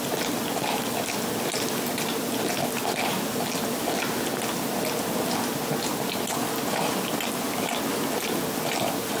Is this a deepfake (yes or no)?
no